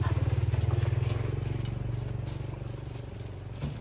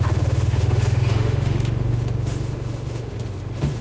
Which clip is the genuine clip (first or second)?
first